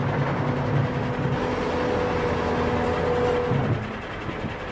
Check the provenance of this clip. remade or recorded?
recorded